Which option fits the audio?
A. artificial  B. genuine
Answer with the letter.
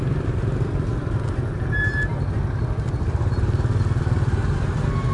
B